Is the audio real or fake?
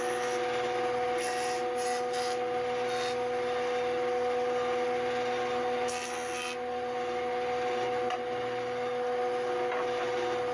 real